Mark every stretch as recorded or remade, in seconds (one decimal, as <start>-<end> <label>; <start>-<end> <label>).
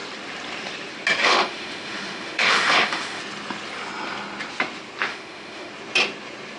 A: 0.0-1.2 recorded; 1.2-3.2 remade; 3.2-5.1 recorded; 5.1-5.7 remade; 5.7-6.6 recorded